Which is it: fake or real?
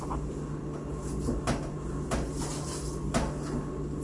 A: real